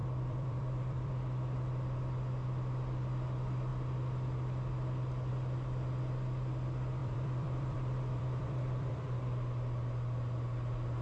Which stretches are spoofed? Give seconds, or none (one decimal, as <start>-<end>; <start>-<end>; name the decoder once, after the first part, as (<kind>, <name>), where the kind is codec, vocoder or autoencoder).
0.0-1.1 (vocoder, BigVGAN v2); 7.0-9.2

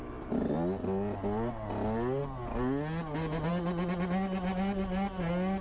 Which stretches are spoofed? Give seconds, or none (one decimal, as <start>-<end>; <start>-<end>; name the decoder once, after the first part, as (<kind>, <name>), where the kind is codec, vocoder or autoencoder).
none